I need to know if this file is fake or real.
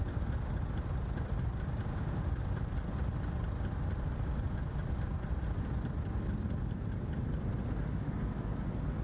real